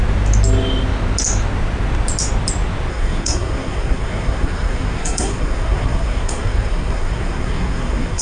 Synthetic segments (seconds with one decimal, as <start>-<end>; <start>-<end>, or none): 2.9-8.2